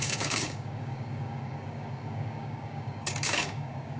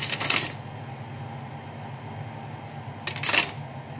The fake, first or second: first